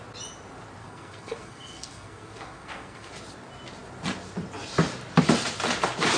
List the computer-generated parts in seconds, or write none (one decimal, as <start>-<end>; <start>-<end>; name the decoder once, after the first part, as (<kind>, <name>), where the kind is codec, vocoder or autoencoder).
0.8-3.1 (codec, SNAC)